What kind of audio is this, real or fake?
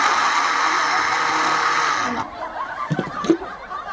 real